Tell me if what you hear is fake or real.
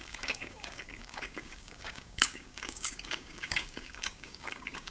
fake